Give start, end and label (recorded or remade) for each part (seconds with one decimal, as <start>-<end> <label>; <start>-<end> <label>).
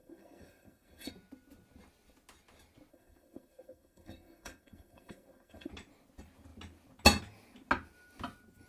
0.0-1.1 remade; 1.1-2.9 recorded; 2.9-5.7 remade; 5.7-8.7 recorded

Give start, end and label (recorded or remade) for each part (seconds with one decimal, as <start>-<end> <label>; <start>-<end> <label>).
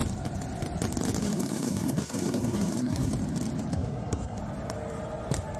0.0-1.2 recorded; 1.2-3.1 remade; 3.1-3.7 recorded; 3.7-4.4 remade; 4.4-5.6 recorded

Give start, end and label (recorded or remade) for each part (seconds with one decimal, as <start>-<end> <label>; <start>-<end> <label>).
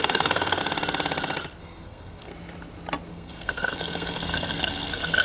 0.0-0.6 remade; 0.6-1.6 recorded; 1.6-2.3 remade; 2.3-3.1 recorded; 3.1-5.2 remade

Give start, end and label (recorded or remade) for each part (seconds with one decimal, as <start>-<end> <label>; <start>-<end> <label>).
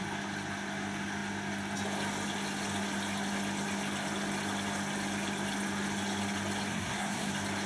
0.0-6.7 recorded; 6.7-7.3 remade; 7.3-7.7 recorded